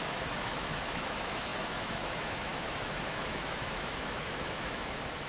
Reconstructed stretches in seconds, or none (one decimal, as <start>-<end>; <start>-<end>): 0.0-5.3